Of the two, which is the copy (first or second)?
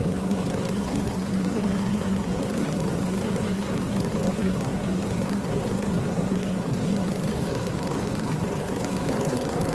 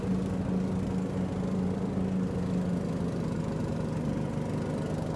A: first